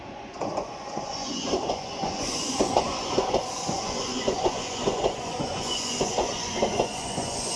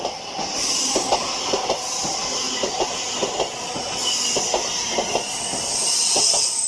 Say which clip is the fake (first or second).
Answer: first